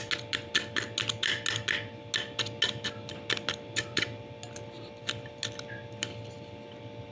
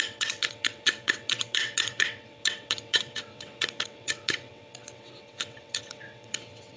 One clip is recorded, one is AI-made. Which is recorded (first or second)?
first